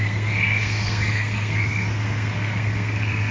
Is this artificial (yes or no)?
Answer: yes